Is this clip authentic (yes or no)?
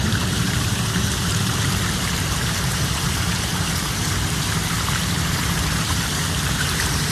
no